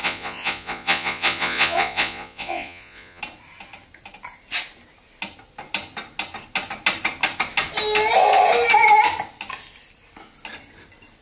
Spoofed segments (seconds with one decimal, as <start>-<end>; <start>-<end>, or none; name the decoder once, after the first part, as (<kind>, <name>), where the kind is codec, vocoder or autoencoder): 0.0-3.2 (vocoder, Vocos)